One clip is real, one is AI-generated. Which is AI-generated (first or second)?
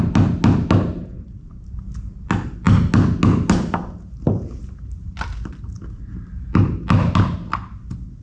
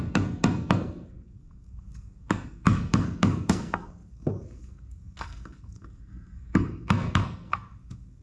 second